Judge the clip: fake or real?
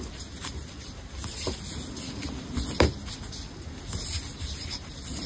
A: real